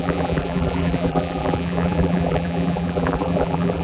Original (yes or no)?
no